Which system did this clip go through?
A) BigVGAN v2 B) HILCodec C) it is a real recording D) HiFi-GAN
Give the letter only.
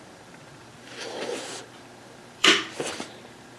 A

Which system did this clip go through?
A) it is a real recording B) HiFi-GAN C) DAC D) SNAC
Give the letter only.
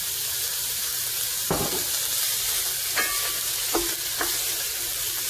A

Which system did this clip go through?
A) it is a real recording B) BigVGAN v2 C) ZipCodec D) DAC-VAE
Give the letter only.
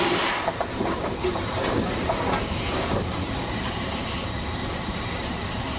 B